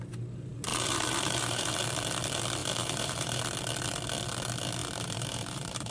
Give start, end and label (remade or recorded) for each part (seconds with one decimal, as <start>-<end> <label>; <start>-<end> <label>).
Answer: 0.0-0.7 recorded; 0.7-1.8 remade; 1.8-2.6 recorded; 2.6-3.4 remade; 3.4-4.8 recorded; 4.8-5.9 remade